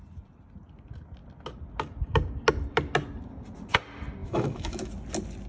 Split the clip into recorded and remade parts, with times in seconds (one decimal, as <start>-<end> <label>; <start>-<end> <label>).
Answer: 0.0-4.2 recorded; 4.2-4.9 remade; 4.9-5.5 recorded